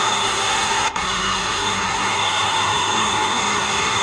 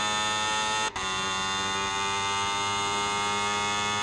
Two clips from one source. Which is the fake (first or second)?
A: first